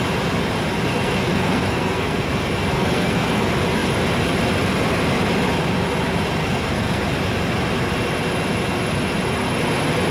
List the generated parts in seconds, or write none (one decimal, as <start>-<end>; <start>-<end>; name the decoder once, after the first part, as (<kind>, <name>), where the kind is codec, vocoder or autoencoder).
0.9-2.3 (codec, SNAC); 2.7-3.4; 6.4-7.0